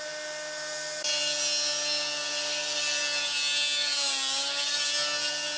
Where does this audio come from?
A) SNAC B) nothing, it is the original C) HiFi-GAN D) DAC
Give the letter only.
B